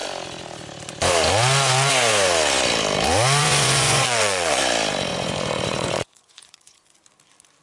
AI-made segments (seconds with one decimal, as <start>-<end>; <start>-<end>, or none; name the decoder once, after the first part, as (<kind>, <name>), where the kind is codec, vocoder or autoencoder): 3.4-4.6 (vocoder, Vocos); 5.1-6.9